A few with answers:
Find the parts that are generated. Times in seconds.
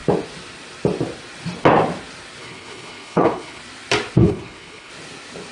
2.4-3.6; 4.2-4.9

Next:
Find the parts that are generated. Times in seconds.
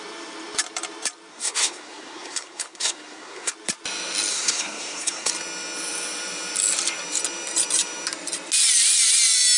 1.3-3.5; 4.3-5.3